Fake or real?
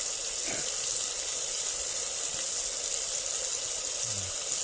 real